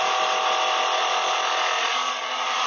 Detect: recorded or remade recorded